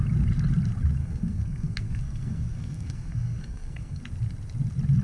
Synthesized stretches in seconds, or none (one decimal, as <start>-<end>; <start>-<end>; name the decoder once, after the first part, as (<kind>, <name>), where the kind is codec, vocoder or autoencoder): 1.0-4.0 (codec, SNAC)